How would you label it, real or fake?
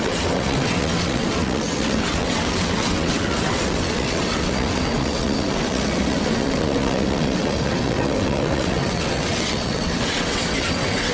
fake